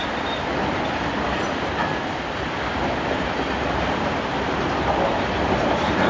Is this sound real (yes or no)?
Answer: yes